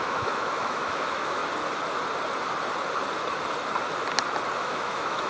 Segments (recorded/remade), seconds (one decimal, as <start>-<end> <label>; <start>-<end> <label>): 0.0-1.4 remade; 1.4-4.6 recorded; 4.6-5.3 remade